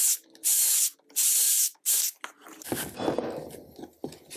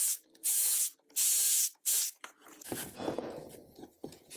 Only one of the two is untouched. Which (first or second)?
first